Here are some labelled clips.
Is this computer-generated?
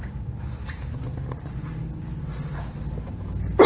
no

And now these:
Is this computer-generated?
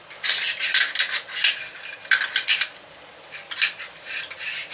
no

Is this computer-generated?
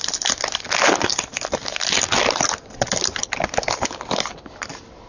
no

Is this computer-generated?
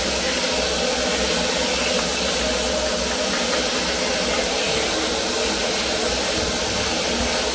no